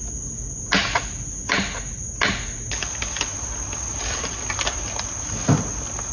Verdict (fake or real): real